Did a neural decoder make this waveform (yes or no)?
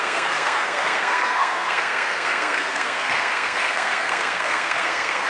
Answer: yes